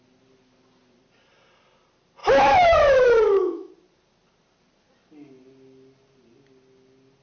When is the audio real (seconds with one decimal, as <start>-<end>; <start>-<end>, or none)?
0.0-2.2; 3.7-7.2